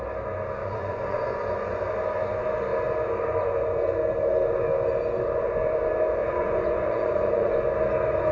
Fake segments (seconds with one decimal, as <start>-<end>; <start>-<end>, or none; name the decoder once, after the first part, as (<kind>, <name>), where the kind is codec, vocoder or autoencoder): 0.6-1.9 (vocoder, Vocos); 6.2-7.5